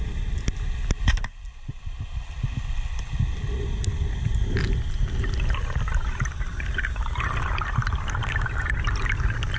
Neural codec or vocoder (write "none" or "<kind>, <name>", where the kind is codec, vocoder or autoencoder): none